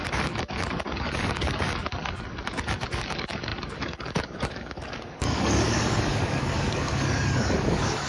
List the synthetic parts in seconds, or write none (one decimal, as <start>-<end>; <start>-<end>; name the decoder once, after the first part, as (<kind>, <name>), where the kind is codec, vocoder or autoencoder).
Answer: 0.0-8.1 (codec, DAC)

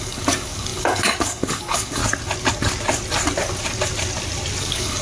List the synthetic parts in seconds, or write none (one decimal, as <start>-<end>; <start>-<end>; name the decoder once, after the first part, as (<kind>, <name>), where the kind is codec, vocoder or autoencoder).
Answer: 0.0-2.0 (codec, DAC); 4.6-5.0